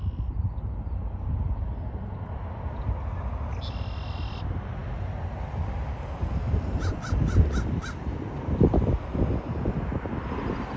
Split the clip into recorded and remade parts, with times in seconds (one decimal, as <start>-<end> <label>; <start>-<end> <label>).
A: 0.0-10.8 recorded